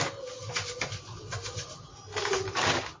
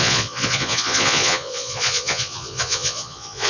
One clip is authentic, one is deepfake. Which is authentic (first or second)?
first